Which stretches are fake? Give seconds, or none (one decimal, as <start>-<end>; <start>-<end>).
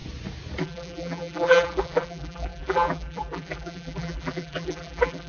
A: 0.6-5.3